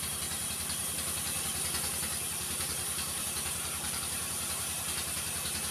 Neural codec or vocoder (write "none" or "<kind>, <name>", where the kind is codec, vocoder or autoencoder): vocoder, BigVGAN v2